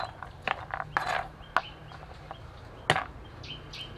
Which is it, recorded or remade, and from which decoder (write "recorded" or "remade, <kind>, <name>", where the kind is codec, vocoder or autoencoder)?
recorded